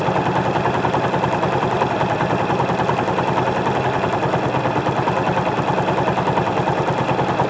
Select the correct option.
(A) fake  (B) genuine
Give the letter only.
B